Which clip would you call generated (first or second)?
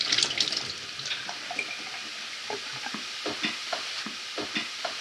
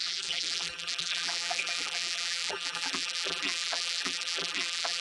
second